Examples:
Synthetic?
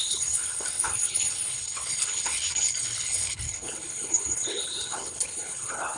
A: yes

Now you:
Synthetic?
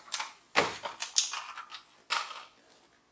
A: no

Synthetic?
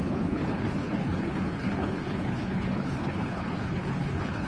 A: yes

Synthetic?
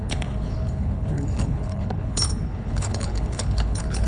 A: yes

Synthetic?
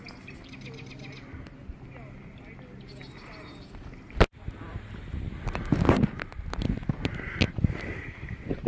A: no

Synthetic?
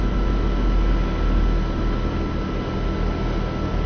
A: no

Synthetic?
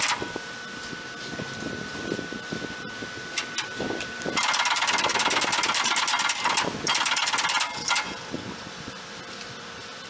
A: no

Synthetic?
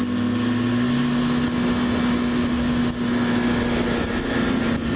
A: no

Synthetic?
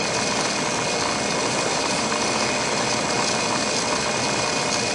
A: no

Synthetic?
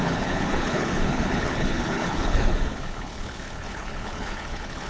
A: yes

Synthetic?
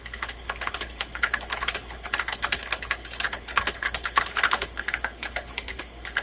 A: yes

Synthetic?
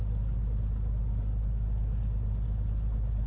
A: no